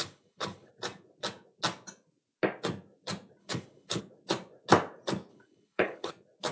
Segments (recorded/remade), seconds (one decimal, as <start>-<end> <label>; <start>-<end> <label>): 0.0-0.7 remade; 0.7-3.4 recorded; 3.4-4.0 remade; 4.0-5.3 recorded; 5.3-6.1 remade; 6.1-6.5 recorded